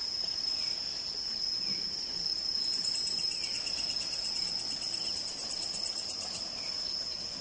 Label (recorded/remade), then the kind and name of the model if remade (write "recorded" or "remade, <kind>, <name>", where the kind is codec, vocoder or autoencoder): recorded